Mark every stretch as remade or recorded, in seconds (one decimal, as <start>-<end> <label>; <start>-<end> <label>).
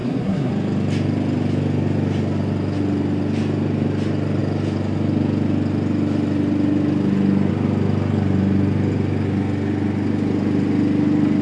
0.0-0.5 remade; 0.5-11.4 recorded